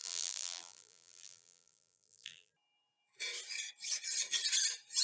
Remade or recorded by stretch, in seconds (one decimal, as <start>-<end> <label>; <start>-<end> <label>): 0.0-2.5 remade; 2.5-5.0 recorded